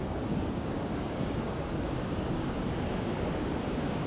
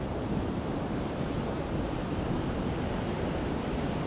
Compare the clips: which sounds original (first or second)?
second